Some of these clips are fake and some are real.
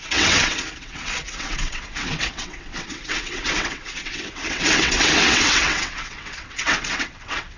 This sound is fake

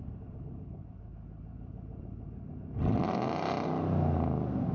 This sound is real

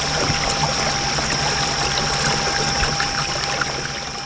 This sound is real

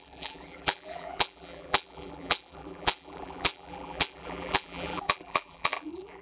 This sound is fake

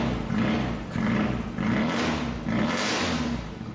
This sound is real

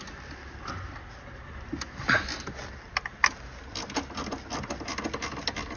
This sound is real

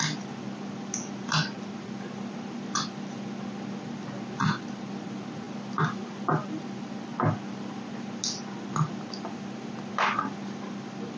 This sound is real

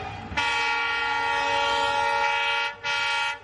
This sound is real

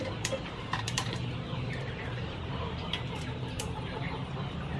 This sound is fake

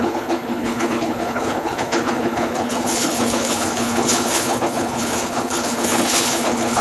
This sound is fake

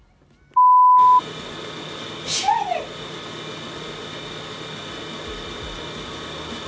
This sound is real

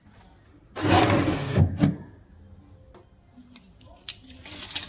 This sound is real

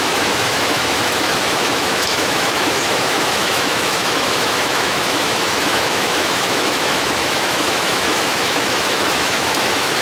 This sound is fake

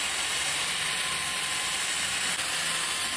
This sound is fake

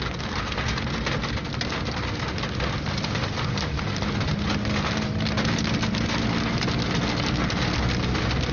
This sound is real